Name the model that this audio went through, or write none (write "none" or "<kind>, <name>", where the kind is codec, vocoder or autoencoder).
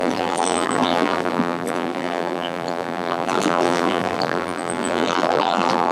vocoder, BigVGAN v2